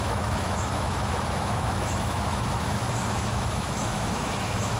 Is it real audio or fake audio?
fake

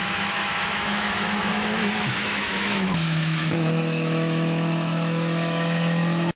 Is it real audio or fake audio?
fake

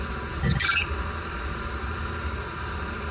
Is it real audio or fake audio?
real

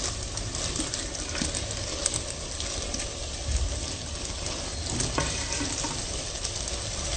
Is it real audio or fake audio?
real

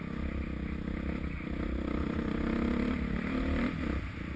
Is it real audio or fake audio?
real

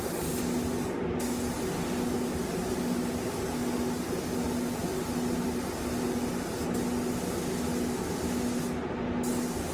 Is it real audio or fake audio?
real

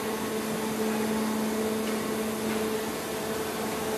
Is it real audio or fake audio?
real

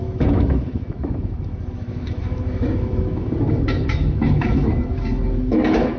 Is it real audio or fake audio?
fake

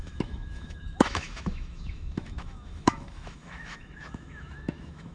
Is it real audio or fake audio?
fake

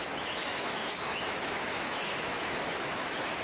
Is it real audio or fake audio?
fake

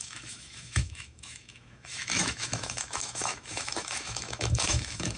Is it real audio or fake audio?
fake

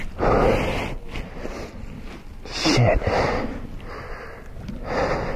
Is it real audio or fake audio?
real